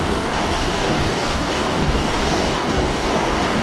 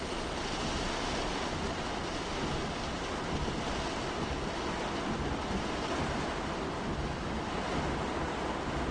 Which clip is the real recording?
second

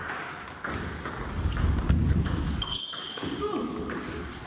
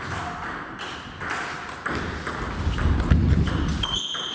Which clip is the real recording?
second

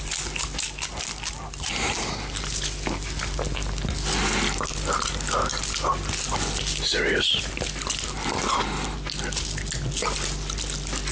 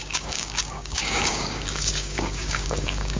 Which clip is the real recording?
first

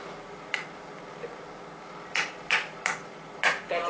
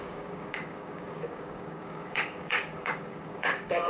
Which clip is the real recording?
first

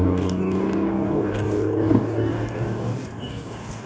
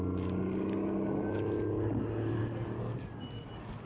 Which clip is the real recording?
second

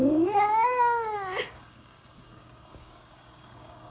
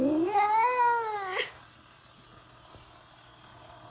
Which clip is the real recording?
second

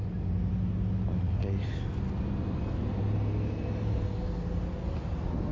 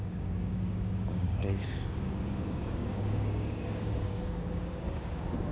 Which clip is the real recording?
first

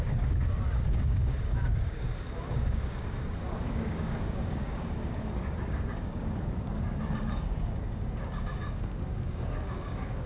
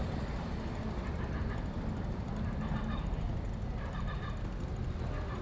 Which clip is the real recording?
second